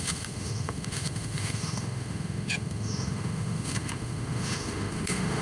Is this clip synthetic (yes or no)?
yes